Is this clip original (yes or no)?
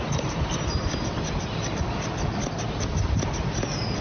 yes